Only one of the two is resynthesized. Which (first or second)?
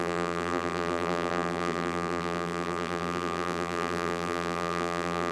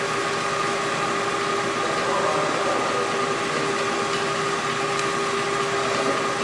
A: first